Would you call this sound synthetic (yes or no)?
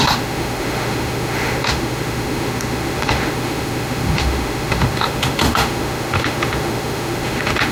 yes